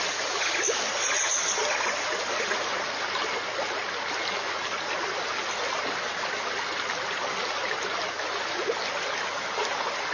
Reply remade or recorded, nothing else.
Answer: recorded